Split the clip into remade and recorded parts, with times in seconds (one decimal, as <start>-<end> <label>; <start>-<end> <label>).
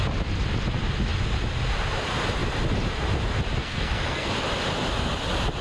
0.0-3.6 recorded; 3.6-4.3 remade; 4.3-5.6 recorded